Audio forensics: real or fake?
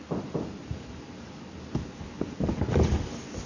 real